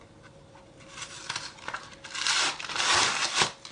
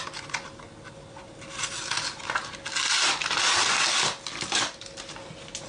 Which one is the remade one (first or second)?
first